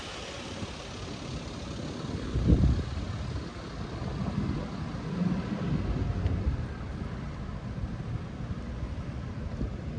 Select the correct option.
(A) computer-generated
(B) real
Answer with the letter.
B